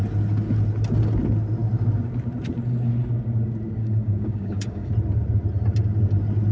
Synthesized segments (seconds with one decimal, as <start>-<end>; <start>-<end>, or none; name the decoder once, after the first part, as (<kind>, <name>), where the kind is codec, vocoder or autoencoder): 3.8-4.9 (codec, DAC)